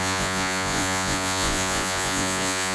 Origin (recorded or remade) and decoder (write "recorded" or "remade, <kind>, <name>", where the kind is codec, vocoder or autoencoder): remade, vocoder, Vocos